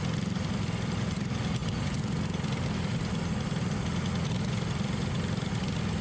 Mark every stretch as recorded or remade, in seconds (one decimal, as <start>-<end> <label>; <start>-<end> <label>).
0.0-6.0 recorded